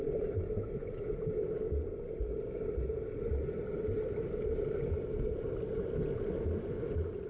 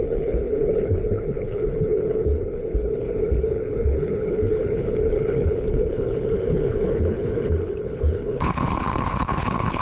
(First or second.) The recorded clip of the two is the first